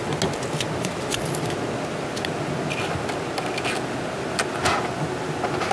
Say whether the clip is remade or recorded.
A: recorded